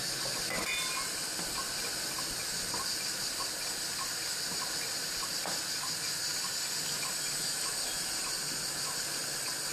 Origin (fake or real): real